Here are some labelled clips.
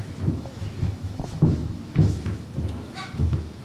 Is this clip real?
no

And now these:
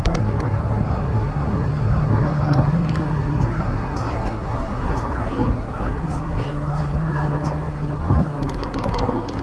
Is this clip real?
no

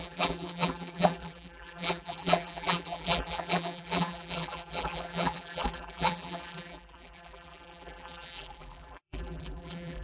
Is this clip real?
no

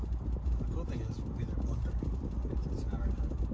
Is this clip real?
yes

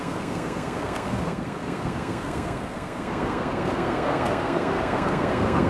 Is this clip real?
no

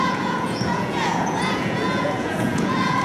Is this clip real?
no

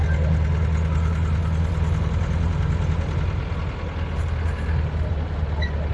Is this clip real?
yes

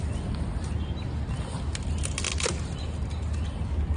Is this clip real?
yes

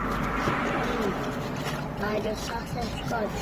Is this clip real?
no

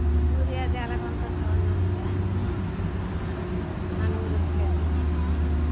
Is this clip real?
yes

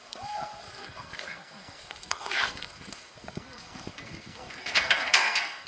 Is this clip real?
no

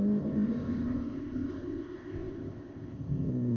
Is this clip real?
no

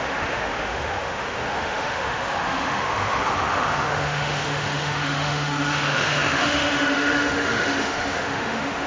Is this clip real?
no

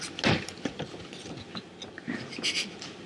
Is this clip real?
yes